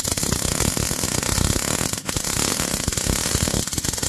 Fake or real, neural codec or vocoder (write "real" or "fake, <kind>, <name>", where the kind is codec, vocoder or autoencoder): real